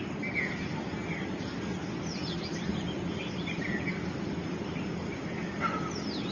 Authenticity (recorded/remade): recorded